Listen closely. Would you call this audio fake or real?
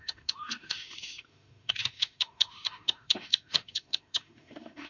fake